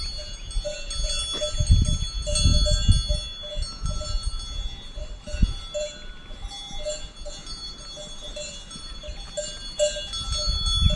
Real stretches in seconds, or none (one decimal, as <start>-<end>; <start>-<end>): 0.0-11.0